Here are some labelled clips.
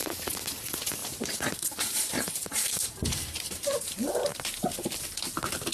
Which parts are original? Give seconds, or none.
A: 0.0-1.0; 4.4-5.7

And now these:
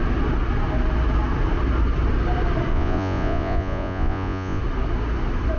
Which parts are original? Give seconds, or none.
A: 0.0-2.7; 4.6-5.6

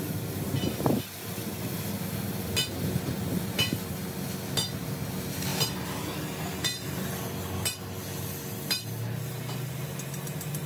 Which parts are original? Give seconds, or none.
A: 0.0-10.7

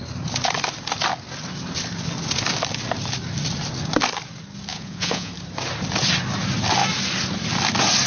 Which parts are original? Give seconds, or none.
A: 0.0-4.7; 5.3-8.1

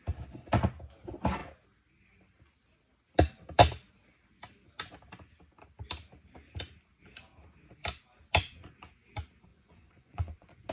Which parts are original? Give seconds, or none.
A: 0.0-9.5

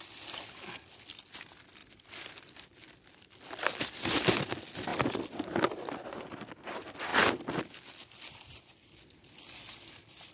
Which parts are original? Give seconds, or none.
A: 4.9-6.5; 7.1-7.6

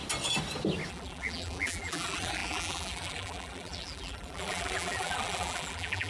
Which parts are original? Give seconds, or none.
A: 0.0-0.9